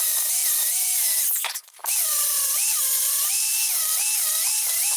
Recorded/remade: remade